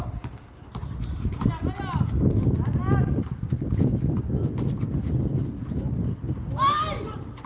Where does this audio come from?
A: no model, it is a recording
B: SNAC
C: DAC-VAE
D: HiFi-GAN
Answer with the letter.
A